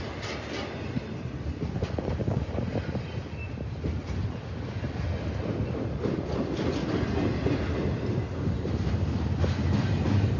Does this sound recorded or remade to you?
recorded